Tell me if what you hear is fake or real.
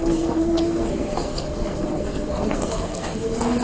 fake